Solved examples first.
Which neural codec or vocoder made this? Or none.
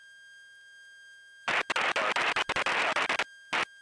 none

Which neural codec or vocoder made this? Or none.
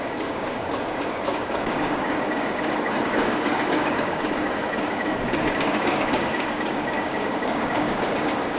codec, DAC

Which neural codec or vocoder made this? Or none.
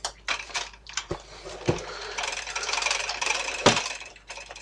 vocoder, BigVGAN v2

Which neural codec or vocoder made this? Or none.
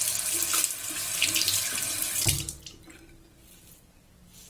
none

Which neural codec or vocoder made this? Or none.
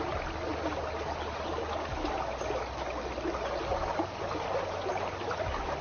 none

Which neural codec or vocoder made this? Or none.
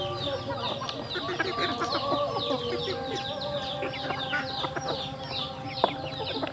none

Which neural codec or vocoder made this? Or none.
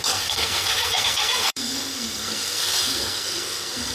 codec, SNAC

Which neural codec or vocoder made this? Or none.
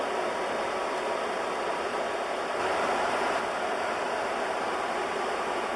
none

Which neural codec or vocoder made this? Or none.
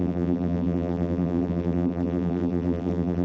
vocoder, BigVGAN v2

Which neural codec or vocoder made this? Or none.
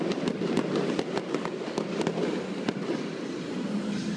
none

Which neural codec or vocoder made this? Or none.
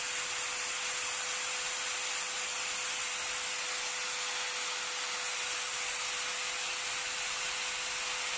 none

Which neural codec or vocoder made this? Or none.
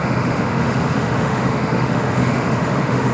autoencoder, DAC-VAE